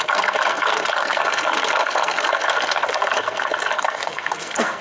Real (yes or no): no